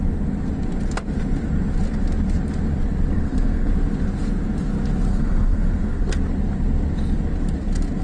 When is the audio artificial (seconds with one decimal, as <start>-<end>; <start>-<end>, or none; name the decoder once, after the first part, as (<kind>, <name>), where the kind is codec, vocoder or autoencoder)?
3.1-3.7 (codec, SNAC); 5.1-6.2